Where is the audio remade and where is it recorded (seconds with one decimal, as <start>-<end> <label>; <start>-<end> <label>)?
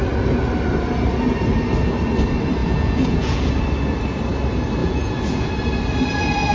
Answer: 0.0-2.6 recorded; 2.6-3.5 remade; 3.5-4.8 recorded; 4.8-5.5 remade; 5.5-6.5 recorded